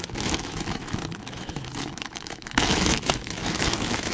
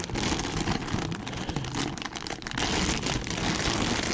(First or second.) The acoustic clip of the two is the second